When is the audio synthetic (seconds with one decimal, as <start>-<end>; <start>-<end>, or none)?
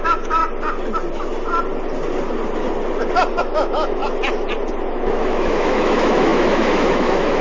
0.0-0.4; 3.4-4.0; 4.7-7.4